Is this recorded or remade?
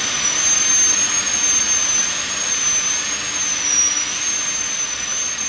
recorded